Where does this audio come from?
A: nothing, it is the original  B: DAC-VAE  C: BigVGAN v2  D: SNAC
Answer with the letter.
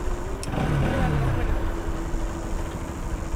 A